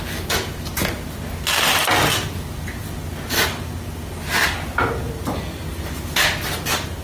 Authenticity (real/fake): real